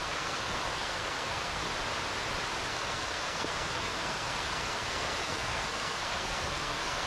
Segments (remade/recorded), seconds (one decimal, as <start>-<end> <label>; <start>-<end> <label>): 0.0-1.6 remade; 1.6-2.7 recorded; 2.7-7.1 remade